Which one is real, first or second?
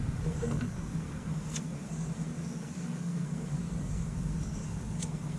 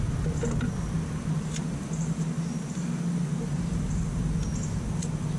second